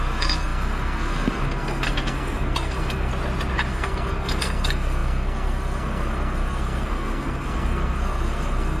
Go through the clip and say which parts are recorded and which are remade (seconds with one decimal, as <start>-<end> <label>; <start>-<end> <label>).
0.0-3.1 remade; 3.1-3.7 recorded; 3.7-8.8 remade